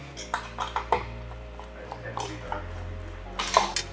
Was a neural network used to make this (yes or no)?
no